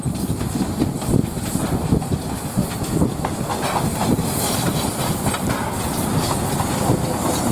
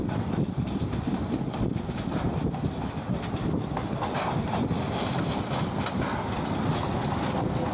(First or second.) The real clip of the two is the first